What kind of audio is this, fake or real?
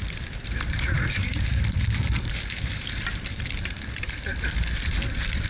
fake